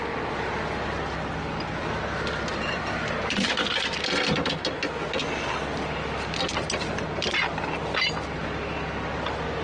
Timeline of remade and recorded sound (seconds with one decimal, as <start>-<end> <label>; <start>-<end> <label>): 0.0-9.6 recorded